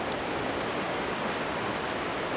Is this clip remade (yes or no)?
no